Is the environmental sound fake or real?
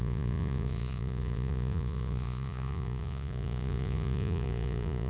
fake